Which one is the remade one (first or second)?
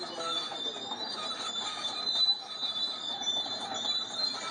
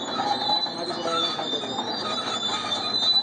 first